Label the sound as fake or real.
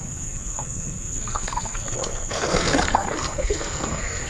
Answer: fake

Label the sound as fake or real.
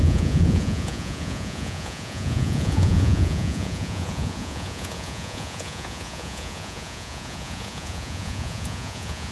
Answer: fake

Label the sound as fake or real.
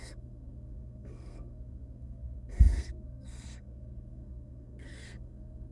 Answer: fake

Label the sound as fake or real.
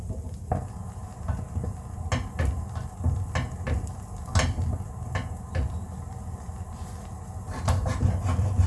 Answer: real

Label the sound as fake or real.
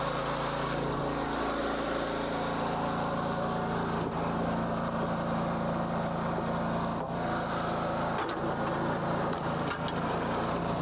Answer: real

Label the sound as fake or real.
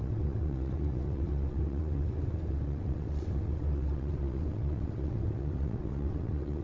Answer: fake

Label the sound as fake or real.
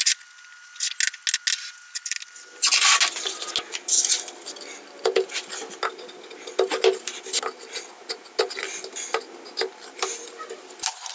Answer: real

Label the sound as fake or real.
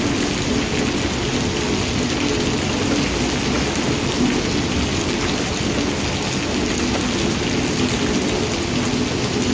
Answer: real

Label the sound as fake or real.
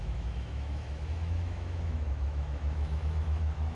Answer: fake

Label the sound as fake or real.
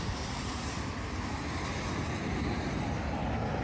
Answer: real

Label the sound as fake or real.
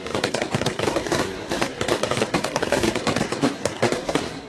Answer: fake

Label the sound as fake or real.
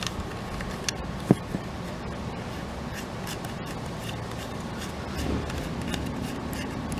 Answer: real